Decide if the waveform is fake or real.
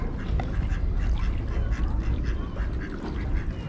real